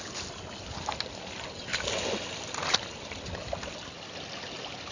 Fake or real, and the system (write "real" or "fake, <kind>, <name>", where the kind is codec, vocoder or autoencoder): real